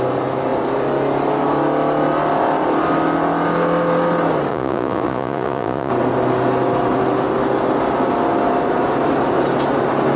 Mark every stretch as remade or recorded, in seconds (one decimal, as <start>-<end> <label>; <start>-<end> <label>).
0.0-4.5 recorded; 4.5-5.9 remade; 5.9-10.2 recorded